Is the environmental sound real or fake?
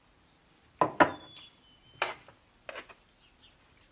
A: real